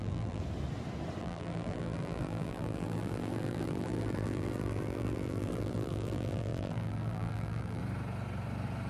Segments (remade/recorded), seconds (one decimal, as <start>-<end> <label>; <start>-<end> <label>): 0.0-0.4 remade; 0.4-1.2 recorded; 1.2-7.8 remade; 7.8-8.9 recorded